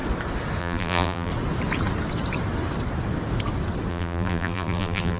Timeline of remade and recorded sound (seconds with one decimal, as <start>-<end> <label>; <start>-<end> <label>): 0.0-0.6 recorded; 0.6-1.3 remade; 1.3-3.9 recorded; 3.9-5.2 remade